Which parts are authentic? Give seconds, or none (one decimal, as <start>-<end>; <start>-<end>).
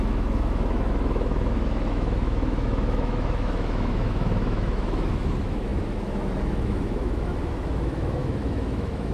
none